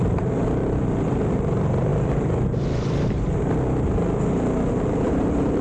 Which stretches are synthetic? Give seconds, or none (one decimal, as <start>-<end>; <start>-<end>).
0.0-1.9; 4.7-5.6